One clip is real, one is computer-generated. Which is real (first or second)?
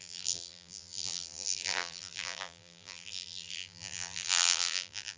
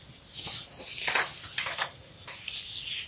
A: second